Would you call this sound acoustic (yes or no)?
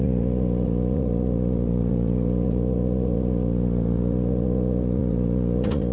no